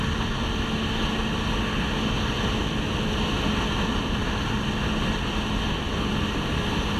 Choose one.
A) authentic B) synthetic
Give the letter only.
A